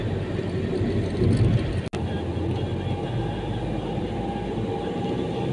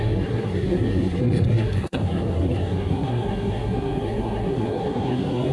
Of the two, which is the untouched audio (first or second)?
first